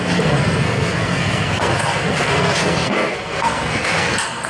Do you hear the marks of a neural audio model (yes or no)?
yes